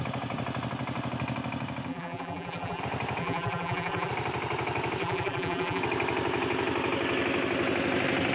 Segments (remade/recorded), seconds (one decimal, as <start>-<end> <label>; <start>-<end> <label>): 0.0-1.9 recorded; 1.9-2.8 remade; 2.8-3.2 recorded; 3.2-4.1 remade; 4.1-5.0 recorded; 5.0-5.8 remade; 5.8-8.3 recorded